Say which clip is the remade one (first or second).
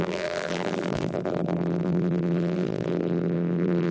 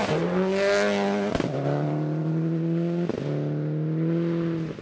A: first